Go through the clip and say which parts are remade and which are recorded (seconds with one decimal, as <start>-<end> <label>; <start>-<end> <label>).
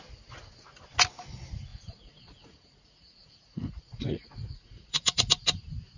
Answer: 0.0-1.7 recorded; 1.7-5.3 remade; 5.3-6.0 recorded